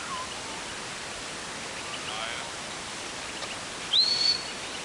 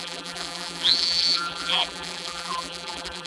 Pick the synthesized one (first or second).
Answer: second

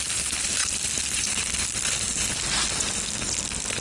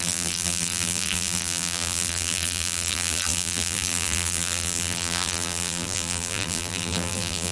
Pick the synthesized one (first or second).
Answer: second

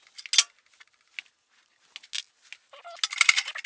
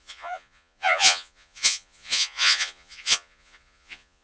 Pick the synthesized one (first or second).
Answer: second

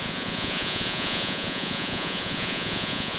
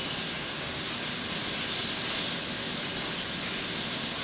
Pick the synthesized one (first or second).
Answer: first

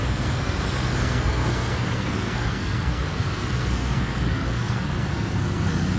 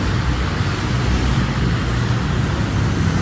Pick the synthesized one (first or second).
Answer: first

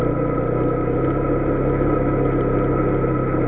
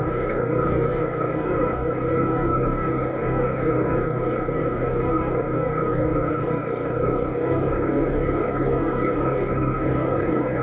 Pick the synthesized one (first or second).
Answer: second